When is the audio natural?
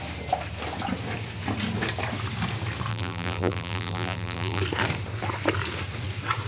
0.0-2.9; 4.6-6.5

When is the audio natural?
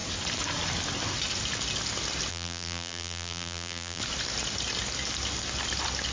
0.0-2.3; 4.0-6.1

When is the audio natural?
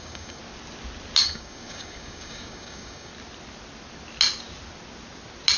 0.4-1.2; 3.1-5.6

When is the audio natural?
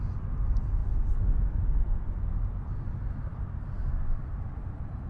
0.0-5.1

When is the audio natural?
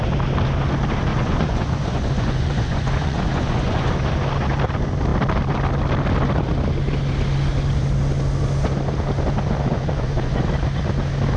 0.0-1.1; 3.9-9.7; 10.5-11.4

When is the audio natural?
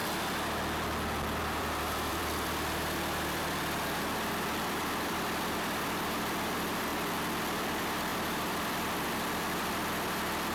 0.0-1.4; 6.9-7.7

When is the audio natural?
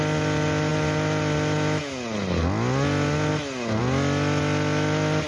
0.0-5.3